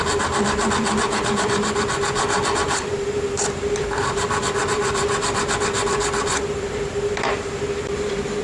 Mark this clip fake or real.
fake